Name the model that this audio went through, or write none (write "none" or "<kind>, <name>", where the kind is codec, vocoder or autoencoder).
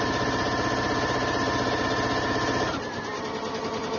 none